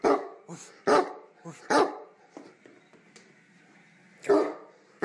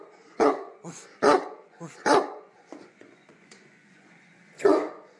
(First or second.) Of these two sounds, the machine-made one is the second